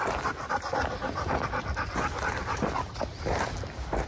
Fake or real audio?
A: real